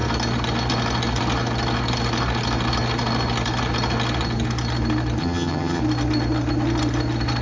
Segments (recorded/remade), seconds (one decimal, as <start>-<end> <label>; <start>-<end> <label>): 0.0-5.2 recorded; 5.2-5.8 remade; 5.8-7.4 recorded